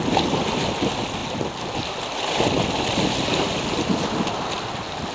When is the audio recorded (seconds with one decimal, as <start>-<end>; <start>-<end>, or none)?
0.0-5.1